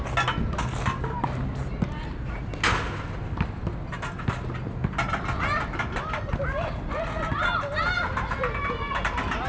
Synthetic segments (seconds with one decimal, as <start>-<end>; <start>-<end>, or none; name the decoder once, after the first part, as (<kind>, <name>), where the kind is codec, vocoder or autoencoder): none